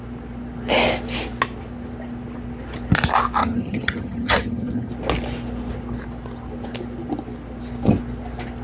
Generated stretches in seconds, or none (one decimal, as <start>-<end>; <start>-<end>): 3.4-4.9